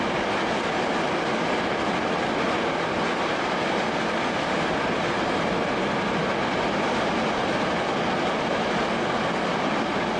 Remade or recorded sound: recorded